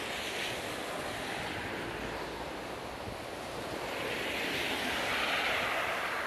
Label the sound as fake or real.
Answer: real